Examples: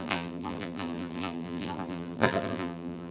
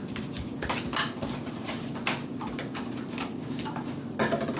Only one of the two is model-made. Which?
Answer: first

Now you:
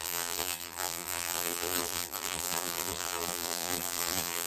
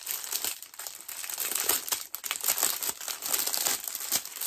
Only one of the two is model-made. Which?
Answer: first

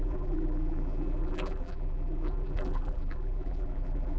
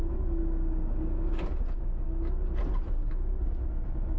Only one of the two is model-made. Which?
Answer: first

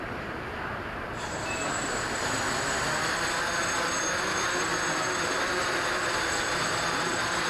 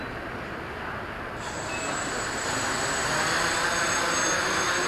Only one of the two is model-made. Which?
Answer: first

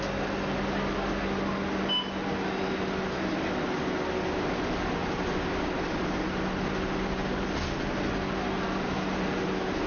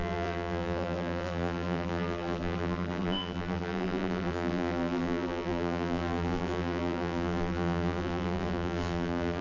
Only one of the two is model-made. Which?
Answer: second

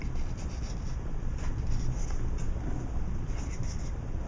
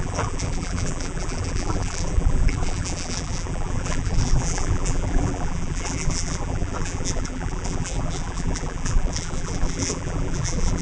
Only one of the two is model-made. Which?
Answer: second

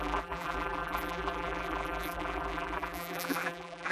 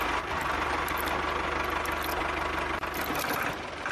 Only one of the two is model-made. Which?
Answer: first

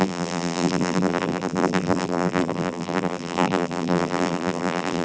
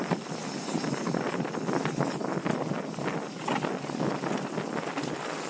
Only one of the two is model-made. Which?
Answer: first